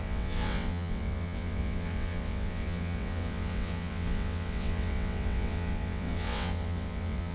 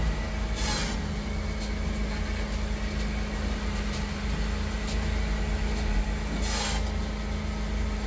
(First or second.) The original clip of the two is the second